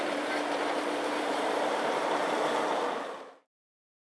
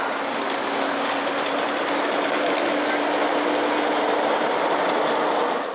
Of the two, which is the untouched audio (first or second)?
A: second